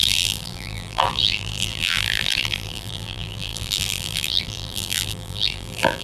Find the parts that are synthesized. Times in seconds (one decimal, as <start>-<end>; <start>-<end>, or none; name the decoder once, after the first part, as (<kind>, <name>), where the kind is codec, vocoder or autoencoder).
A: 0.0-6.0 (vocoder, BigVGAN v2)